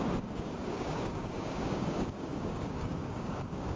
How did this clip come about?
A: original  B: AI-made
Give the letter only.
B